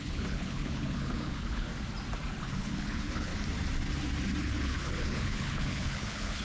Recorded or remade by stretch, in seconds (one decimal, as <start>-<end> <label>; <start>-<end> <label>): 0.0-1.7 remade; 1.7-2.4 recorded; 2.4-3.3 remade; 3.3-4.4 recorded; 4.4-6.4 remade